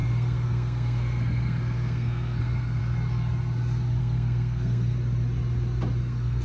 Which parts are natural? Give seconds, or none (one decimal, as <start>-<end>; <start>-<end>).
2.8-4.0; 4.9-6.0

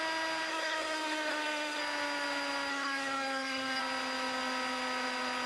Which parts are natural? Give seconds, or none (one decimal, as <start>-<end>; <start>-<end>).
0.0-0.5; 1.8-2.7; 3.8-5.5